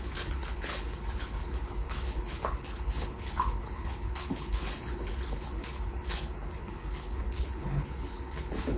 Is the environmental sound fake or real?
fake